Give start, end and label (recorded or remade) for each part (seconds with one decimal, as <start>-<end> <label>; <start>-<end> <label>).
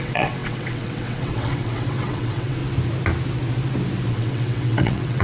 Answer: 0.0-2.6 remade; 2.6-4.1 recorded; 4.1-5.2 remade